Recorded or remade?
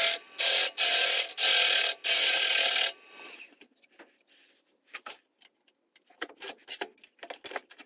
recorded